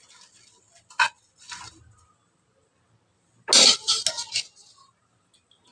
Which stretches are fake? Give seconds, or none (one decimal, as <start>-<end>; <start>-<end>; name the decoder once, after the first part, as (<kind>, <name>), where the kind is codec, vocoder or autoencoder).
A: none